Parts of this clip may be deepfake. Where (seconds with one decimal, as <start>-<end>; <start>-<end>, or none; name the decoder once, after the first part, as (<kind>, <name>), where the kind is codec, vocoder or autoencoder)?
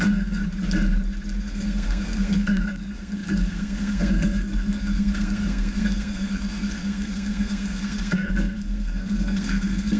0.0-0.4 (codec, SNAC); 1.4-10.0